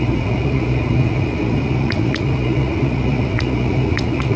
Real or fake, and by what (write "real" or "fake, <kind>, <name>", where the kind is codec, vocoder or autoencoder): fake, vocoder, Vocos